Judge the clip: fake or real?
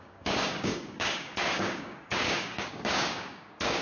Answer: fake